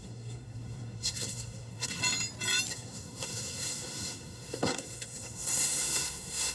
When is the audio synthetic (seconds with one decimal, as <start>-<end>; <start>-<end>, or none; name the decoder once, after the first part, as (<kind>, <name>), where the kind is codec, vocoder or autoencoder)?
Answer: 0.0-2.0 (codec, SNAC); 2.7-6.5